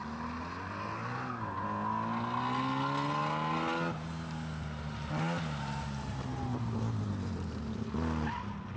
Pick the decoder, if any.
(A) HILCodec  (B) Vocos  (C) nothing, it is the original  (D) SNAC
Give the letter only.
C